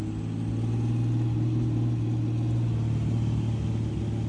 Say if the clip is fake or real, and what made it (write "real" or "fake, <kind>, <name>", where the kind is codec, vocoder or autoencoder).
real